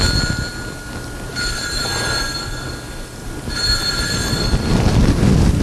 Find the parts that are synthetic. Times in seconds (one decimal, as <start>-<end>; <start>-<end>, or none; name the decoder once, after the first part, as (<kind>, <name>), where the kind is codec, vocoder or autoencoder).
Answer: 1.3-2.7 (vocoder, BigVGAN v2); 3.2-4.7